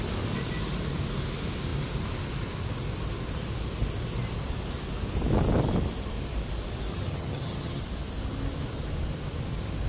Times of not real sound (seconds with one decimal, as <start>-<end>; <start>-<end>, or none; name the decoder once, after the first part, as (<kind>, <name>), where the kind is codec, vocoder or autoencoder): 6.9-7.8 (vocoder, HiFi-GAN)

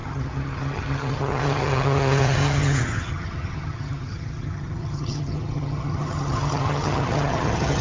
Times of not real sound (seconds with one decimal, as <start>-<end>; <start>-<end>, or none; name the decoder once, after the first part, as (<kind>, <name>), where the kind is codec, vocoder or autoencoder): 0.0-7.8 (vocoder, HiFi-GAN)

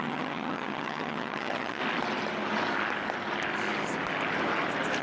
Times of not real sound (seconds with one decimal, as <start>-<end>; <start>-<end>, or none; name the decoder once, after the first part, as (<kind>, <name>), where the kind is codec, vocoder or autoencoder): 0.0-1.8 (vocoder, HiFi-GAN)

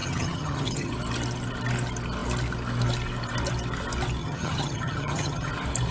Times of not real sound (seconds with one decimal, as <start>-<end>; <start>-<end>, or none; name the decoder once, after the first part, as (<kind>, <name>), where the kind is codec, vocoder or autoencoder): 0.0-0.9 (vocoder, HiFi-GAN); 4.2-5.5